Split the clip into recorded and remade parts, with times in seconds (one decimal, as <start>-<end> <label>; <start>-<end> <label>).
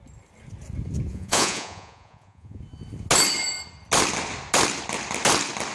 0.0-1.1 recorded; 1.1-2.6 remade; 2.6-5.7 recorded